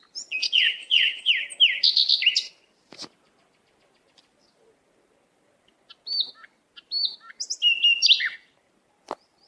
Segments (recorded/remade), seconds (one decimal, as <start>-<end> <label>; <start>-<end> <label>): 0.0-0.4 recorded; 0.4-1.3 remade; 1.3-9.5 recorded